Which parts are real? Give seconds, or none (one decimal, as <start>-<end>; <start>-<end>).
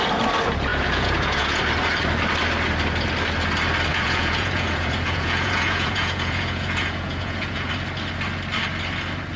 0.0-0.7; 1.6-3.9; 7.7-9.4